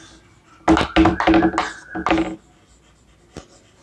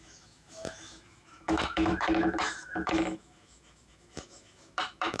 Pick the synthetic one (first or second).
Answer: second